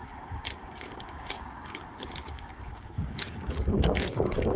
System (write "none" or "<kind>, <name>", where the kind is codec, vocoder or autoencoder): codec, DAC